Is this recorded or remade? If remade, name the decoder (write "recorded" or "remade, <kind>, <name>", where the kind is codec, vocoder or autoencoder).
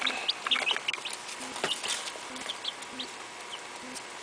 recorded